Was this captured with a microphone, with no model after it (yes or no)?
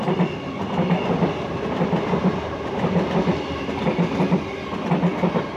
yes